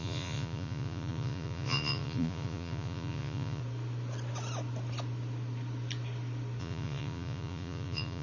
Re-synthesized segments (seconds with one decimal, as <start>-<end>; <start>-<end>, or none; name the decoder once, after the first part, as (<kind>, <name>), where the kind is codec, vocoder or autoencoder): 0.0-3.6 (vocoder, Vocos); 6.6-8.2